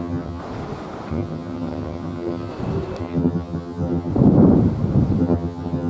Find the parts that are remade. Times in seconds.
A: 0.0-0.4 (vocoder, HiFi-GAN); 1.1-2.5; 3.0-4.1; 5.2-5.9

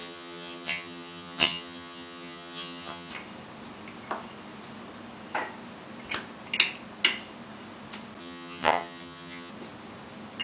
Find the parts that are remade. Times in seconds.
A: 0.0-3.1 (vocoder, HiFi-GAN); 8.2-9.5

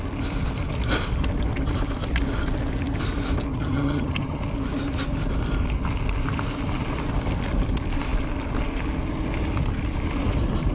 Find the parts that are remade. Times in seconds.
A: 3.5-4.4 (vocoder, HiFi-GAN)

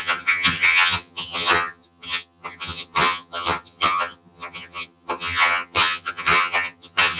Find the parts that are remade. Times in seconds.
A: 0.0-7.2 (vocoder, HiFi-GAN)

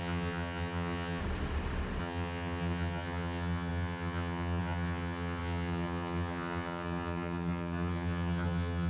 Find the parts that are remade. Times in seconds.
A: 0.0-1.2 (vocoder, HiFi-GAN); 2.0-8.9

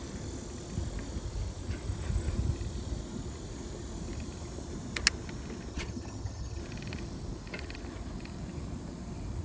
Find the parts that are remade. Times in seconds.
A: 5.7-6.6 (vocoder, HiFi-GAN)

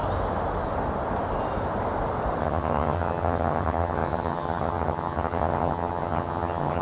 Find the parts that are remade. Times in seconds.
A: 2.4-6.8 (vocoder, HiFi-GAN)